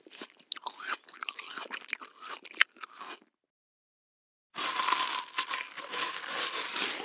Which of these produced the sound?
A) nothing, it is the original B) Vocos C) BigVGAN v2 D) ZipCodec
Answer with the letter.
A